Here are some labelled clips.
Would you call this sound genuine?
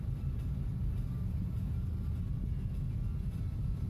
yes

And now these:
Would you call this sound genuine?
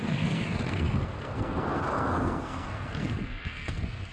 no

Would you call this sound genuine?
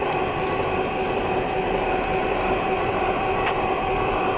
yes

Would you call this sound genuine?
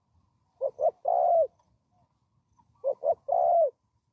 yes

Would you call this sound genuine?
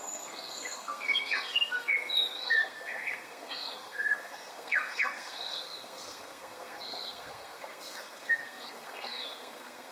no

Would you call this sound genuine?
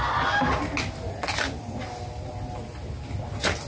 yes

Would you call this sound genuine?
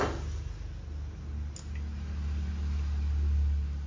yes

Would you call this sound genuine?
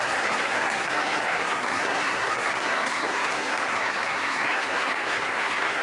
no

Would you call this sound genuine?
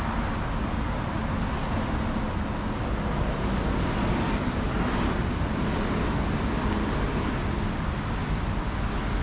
yes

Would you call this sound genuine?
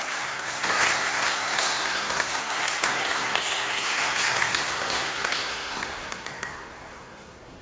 no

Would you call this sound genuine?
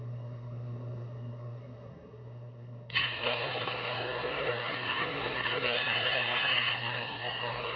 no